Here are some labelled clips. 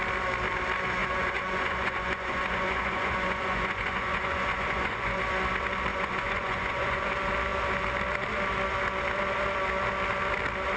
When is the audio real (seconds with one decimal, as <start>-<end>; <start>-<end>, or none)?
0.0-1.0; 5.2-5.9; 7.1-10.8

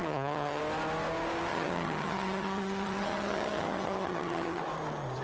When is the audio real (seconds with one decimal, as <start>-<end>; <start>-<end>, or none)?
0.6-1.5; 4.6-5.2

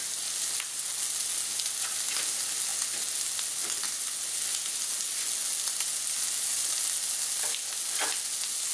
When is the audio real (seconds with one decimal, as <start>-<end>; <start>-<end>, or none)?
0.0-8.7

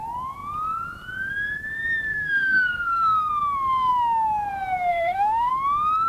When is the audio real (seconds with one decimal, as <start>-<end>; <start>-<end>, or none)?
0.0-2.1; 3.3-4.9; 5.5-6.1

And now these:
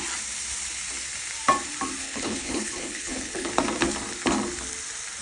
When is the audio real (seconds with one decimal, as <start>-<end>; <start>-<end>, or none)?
0.0-2.0; 3.5-5.2